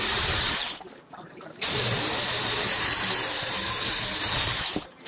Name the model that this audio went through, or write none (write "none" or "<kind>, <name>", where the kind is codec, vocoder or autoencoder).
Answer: vocoder, BigVGAN v2